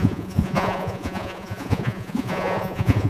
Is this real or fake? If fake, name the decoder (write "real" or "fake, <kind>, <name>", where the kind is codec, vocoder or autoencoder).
fake, vocoder, Vocos